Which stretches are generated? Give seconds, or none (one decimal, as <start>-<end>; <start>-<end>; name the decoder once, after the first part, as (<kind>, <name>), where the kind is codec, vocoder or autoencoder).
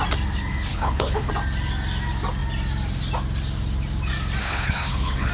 0.7-1.3 (codec, HILCodec); 4.4-5.3